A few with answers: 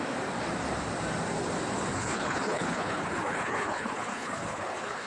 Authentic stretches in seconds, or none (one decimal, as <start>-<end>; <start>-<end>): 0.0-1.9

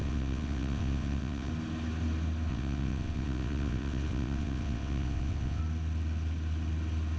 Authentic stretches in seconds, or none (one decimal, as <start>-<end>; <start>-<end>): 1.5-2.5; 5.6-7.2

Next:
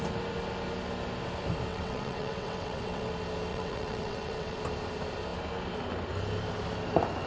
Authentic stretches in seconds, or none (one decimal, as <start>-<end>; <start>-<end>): 0.0-1.7; 3.1-3.5; 4.6-7.3